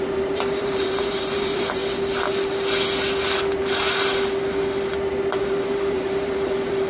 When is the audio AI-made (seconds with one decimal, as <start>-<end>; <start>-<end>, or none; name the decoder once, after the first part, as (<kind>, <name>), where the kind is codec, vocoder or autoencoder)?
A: 0.0-1.8 (vocoder, BigVGAN v2); 5.4-6.9